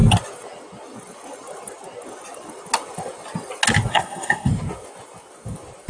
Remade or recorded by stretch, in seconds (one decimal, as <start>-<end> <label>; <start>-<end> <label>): 0.0-3.9 recorded; 3.9-4.5 remade; 4.5-5.9 recorded